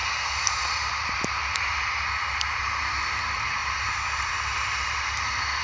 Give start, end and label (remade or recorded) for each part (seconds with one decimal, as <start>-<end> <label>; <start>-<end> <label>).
0.0-0.9 recorded; 0.9-1.5 remade; 1.5-3.0 recorded; 3.0-3.6 remade; 3.6-4.3 recorded; 4.3-5.6 remade